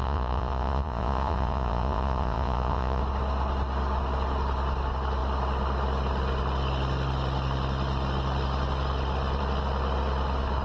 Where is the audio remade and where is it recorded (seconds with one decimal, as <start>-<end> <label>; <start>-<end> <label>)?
0.0-3.0 remade; 3.0-10.6 recorded